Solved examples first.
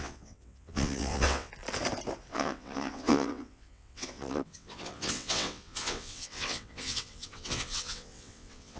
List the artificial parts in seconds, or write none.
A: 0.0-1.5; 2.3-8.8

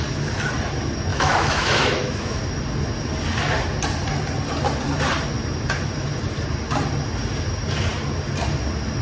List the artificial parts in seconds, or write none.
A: 1.1-2.4

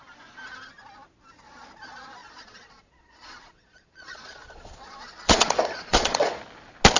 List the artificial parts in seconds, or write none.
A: 2.2-6.4

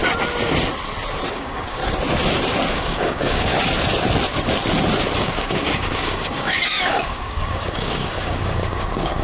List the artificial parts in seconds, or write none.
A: 1.3-1.8; 2.7-3.5; 5.2-9.2

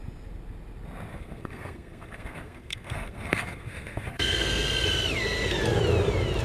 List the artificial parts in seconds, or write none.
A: 1.1-4.9